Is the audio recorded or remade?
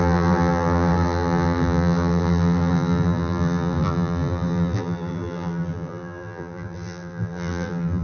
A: remade